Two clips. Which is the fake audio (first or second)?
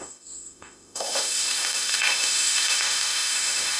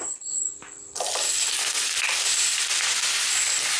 first